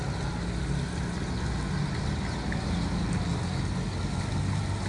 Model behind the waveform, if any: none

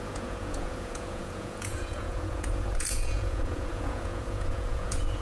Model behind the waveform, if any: vocoder, Vocos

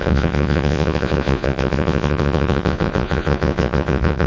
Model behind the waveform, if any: vocoder, Vocos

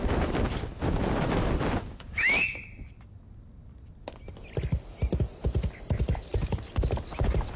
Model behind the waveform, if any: none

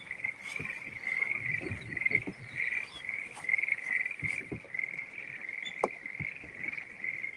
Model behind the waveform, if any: none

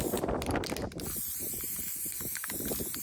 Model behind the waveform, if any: none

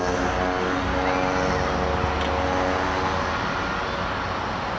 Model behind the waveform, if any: none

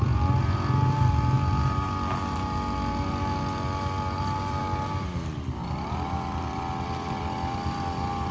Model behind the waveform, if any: none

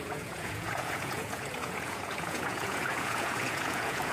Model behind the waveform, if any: vocoder, Vocos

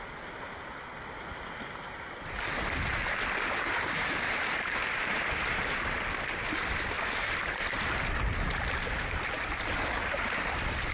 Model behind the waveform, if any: none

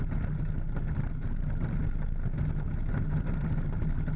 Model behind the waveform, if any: none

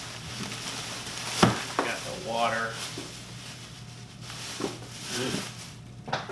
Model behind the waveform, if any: none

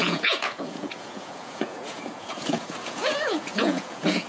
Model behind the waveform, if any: vocoder, Vocos